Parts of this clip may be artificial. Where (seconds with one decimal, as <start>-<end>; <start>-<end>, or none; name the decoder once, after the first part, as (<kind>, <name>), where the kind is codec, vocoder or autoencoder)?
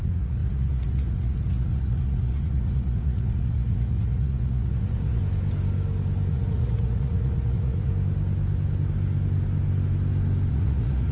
0.0-5.2 (vocoder, Vocos); 6.3-7.9; 10.5-11.1